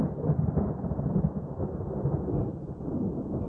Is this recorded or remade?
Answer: remade